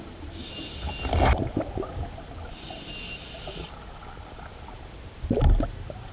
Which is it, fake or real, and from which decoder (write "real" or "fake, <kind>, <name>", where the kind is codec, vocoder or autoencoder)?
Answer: real